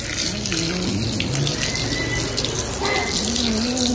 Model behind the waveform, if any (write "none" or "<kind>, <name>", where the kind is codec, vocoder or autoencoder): none